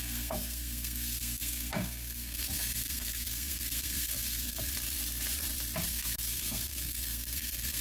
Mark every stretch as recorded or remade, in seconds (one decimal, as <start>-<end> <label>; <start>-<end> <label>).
0.0-4.7 remade; 4.7-5.9 recorded; 5.9-7.8 remade